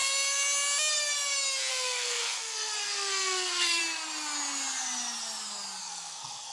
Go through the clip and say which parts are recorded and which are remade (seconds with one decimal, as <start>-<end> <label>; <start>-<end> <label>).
0.0-1.7 recorded; 1.7-3.8 remade; 3.8-5.8 recorded; 5.8-6.5 remade